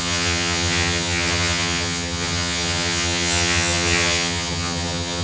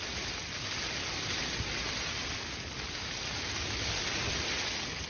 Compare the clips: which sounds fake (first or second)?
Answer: first